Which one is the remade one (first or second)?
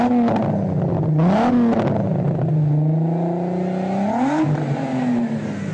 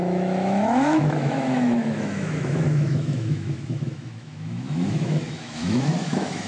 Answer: second